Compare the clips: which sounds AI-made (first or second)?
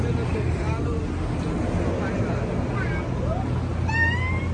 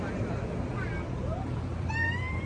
second